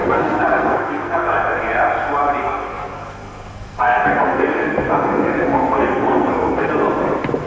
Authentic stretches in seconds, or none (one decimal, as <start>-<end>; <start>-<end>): 1.6-2.4; 6.7-7.5